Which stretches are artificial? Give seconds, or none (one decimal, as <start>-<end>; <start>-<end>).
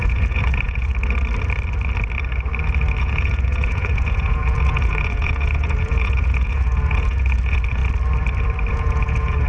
0.0-0.9; 3.0-7.8; 8.7-9.5